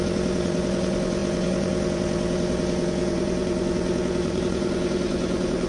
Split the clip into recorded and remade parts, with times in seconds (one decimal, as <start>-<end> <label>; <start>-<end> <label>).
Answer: 0.0-5.7 remade